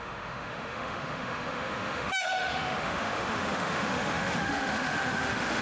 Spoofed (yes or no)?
yes